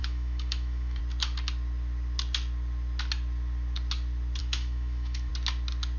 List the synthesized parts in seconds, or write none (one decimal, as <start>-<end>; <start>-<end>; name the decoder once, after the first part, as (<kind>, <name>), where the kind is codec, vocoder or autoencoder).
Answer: 0.0-1.0 (autoencoder, DAC-VAE); 4.4-5.3